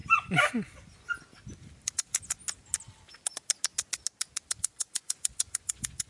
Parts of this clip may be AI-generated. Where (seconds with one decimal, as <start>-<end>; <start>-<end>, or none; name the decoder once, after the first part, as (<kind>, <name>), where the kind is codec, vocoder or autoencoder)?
1.9-2.4 (vocoder, Vocos); 4.6-6.1

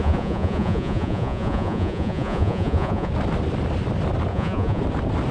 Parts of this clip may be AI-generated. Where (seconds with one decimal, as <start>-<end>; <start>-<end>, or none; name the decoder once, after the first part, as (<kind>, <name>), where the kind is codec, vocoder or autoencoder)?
0.0-3.1 (vocoder, Vocos); 4.3-4.8

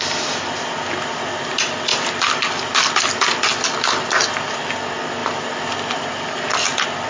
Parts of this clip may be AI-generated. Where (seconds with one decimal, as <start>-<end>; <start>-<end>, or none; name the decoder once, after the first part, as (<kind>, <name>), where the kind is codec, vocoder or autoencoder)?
none

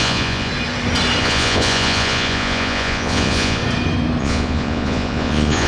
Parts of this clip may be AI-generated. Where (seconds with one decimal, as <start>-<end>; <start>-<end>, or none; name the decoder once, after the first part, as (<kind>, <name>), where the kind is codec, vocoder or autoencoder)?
0.0-0.5 (vocoder, Vocos); 1.2-3.6; 4.2-5.7

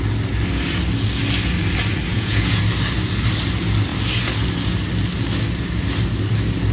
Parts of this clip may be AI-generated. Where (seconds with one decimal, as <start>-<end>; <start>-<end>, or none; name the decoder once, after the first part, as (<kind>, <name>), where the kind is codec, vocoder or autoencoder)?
2.1-2.6 (vocoder, Vocos)

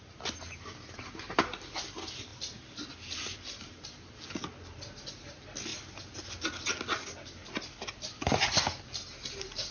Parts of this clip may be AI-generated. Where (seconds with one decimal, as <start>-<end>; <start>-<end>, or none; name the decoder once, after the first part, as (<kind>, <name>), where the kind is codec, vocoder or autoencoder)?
none